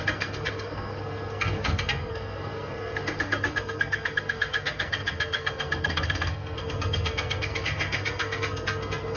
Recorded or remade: remade